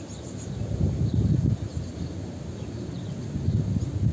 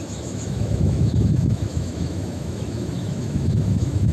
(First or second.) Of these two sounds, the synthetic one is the second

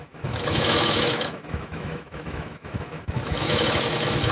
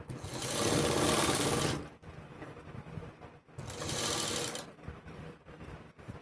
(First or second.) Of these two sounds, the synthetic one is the first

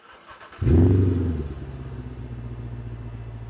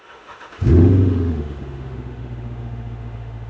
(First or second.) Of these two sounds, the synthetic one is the second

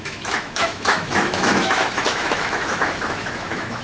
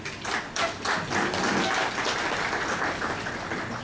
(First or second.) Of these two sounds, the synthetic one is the first